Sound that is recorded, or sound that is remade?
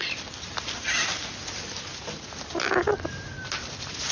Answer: recorded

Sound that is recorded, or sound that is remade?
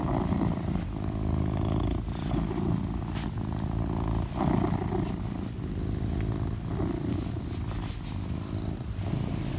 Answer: recorded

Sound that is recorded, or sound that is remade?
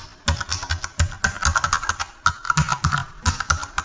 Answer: recorded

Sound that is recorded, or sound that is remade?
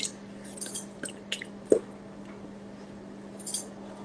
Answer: recorded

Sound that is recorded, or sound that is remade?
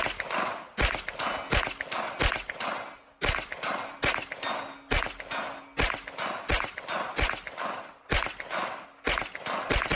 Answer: recorded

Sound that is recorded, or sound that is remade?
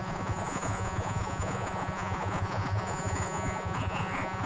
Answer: remade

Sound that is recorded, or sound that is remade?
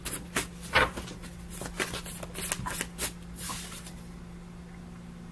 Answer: recorded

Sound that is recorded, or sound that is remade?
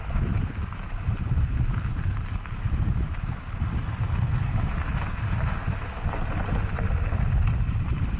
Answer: recorded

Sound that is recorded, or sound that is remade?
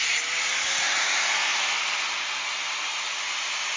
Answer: recorded